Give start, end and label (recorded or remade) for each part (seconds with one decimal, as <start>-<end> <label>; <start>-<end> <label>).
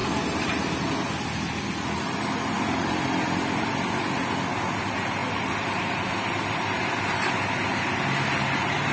0.0-5.2 recorded; 5.2-7.4 remade; 7.4-8.9 recorded